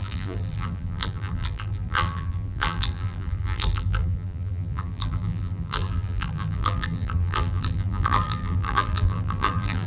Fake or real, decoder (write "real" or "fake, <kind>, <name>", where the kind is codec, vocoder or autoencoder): fake, vocoder, BigVGAN v2